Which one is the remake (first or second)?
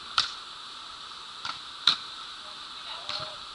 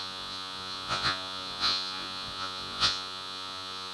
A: second